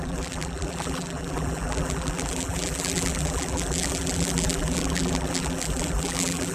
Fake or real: fake